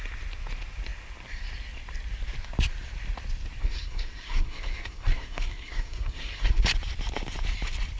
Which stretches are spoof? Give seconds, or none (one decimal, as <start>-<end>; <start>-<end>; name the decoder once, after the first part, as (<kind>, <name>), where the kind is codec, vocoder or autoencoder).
3.6-6.6 (codec, SNAC)